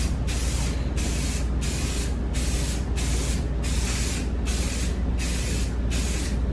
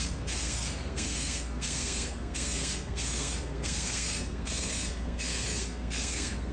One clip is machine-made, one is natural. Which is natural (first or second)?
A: first